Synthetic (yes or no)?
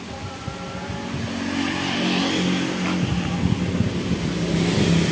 no